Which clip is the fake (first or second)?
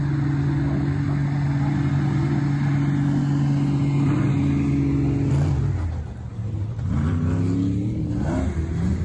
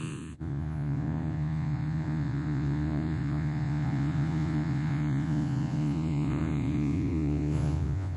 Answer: second